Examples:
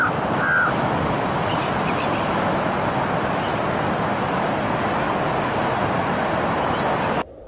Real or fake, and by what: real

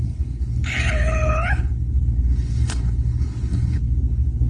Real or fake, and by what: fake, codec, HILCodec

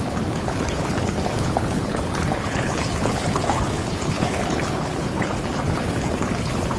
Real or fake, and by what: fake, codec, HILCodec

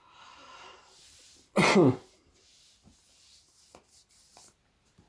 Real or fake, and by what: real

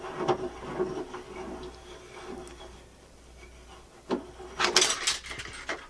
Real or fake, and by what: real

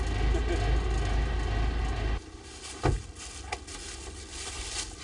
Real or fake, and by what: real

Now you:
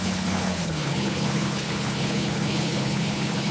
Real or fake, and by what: fake, codec, HILCodec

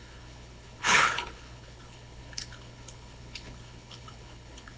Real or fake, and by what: fake, codec, HILCodec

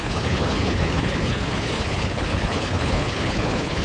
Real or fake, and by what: fake, codec, HILCodec